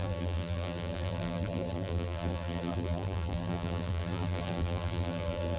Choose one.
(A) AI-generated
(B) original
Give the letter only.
A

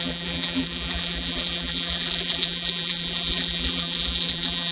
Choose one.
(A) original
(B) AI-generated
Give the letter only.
B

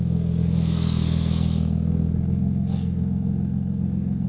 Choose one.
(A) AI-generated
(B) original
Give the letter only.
A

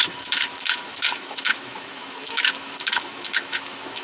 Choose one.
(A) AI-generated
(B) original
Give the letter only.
A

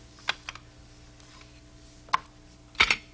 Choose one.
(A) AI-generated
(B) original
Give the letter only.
B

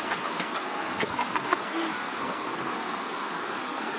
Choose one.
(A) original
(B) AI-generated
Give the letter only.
B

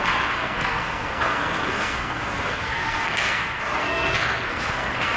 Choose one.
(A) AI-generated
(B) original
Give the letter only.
A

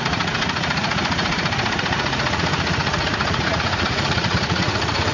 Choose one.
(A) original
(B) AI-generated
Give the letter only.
B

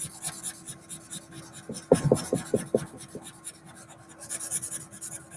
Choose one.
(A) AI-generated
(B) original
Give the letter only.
B